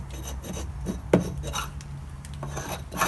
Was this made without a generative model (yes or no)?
yes